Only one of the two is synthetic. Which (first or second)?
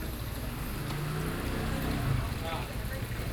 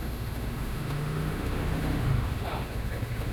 second